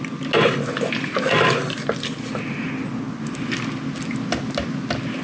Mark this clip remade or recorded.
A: recorded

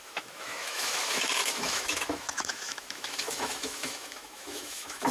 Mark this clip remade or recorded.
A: remade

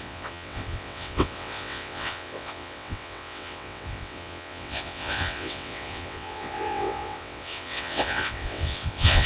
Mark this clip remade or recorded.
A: remade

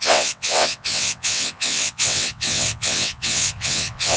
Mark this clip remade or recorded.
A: remade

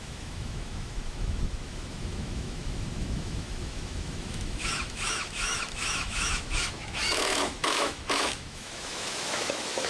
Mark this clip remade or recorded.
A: remade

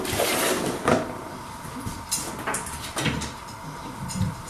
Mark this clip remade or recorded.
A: recorded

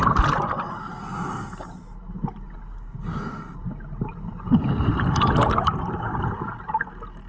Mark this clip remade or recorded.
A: recorded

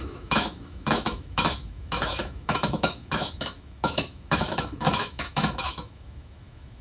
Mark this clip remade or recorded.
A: remade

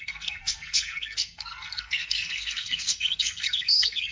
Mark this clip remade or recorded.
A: remade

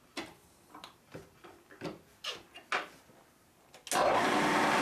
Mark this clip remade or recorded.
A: recorded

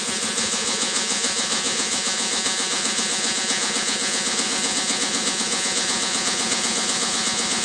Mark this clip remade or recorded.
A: remade